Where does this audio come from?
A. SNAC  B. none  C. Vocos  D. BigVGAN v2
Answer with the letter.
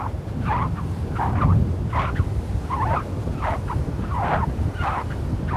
B